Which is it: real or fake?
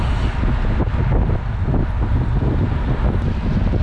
real